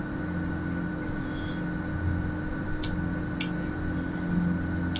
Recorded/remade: recorded